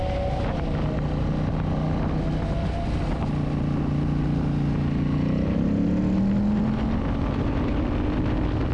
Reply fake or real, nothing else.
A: real